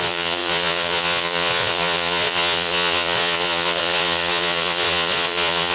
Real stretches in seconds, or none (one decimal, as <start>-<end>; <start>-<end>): none